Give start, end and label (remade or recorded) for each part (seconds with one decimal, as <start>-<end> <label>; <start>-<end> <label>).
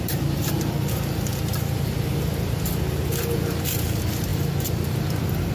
0.0-5.5 recorded